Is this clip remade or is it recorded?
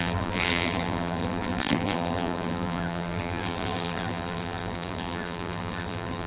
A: remade